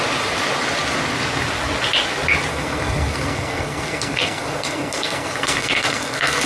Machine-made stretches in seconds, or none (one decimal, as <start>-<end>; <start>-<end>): 2.5-6.5